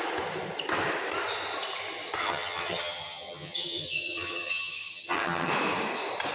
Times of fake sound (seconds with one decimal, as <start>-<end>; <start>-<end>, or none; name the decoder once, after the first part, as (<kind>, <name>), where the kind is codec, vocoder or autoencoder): 2.2-5.5 (vocoder, HiFi-GAN)